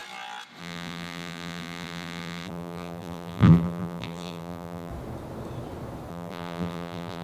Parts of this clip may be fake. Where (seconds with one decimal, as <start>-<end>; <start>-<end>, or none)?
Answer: 0.6-4.9; 6.1-7.2